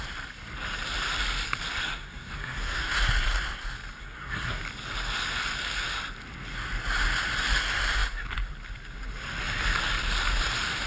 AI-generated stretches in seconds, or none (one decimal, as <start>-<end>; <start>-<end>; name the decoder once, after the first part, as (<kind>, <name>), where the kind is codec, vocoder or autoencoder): 1.8-2.9 (codec, SNAC); 4.0-4.6